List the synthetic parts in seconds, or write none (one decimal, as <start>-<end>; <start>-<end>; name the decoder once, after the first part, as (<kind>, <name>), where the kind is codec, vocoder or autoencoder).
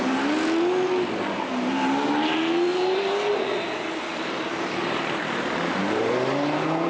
2.7-6.1 (vocoder, BigVGAN v2)